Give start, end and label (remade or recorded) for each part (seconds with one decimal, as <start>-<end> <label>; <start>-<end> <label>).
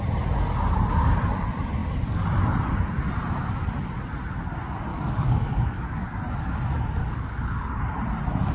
0.0-4.9 recorded; 4.9-6.2 remade; 6.2-7.0 recorded; 7.0-7.8 remade; 7.8-8.5 recorded